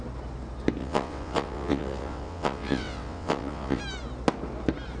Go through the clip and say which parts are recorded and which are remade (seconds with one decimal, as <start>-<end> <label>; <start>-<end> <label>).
0.0-0.8 recorded; 0.8-3.8 remade; 3.8-5.0 recorded